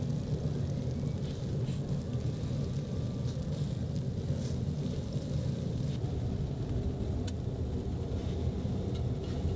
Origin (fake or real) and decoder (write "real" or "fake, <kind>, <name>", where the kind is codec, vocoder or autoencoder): real